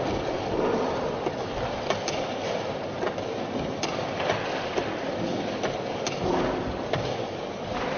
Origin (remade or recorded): recorded